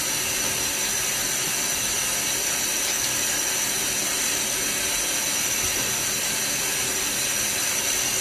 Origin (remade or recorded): recorded